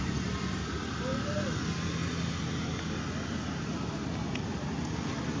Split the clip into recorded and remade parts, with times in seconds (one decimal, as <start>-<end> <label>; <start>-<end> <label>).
0.0-5.4 recorded